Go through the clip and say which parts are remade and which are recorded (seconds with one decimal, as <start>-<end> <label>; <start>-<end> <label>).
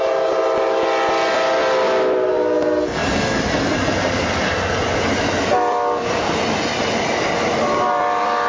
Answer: 0.0-8.5 recorded